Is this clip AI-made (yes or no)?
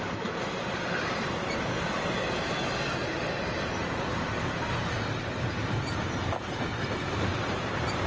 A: yes